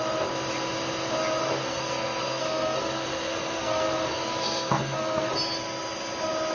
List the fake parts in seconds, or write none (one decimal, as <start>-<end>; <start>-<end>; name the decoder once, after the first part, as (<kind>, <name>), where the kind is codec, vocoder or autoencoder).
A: 1.4-5.3 (codec, SNAC)